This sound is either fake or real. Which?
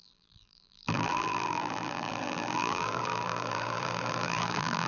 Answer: fake